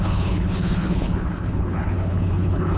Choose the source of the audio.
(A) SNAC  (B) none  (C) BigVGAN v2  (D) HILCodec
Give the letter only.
D